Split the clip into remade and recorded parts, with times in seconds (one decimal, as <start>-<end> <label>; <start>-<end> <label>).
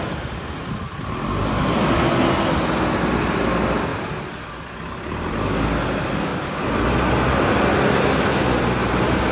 0.0-9.3 recorded